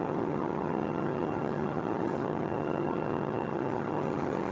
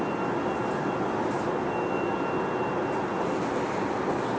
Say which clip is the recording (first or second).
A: second